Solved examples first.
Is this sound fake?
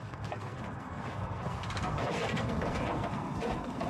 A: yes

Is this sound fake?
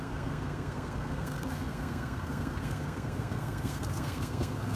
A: yes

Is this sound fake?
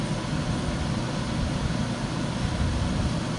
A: no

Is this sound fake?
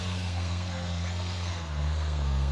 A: yes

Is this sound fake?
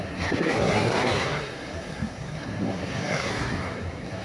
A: yes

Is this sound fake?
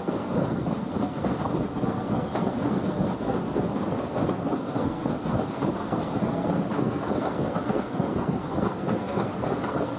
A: yes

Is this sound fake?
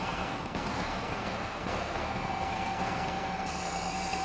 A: yes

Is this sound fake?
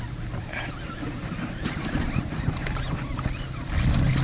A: no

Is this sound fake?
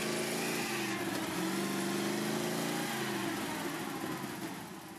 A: no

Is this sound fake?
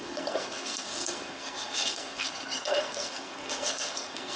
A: yes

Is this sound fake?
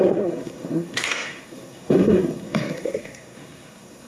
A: yes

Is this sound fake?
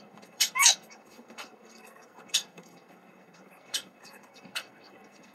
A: yes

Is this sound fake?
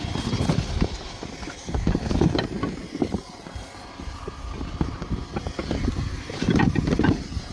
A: no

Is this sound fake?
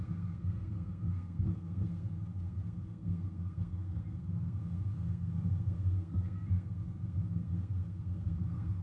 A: yes